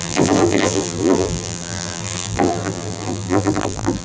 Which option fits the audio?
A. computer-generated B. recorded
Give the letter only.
A